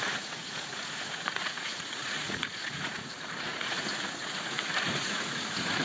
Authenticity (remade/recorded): remade